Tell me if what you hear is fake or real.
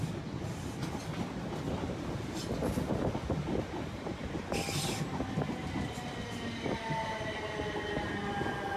real